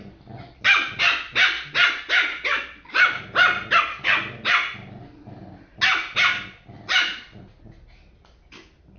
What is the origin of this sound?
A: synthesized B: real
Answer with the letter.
B